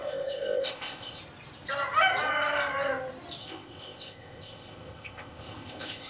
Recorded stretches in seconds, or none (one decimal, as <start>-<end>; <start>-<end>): 1.2-3.4